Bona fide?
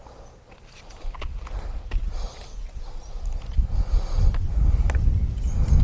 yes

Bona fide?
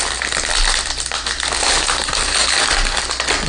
yes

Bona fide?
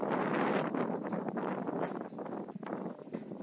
yes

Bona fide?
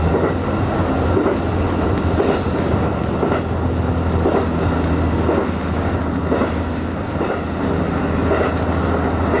yes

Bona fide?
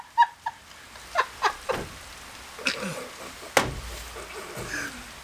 yes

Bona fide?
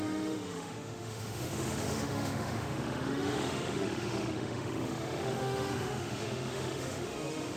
no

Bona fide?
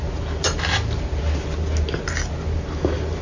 yes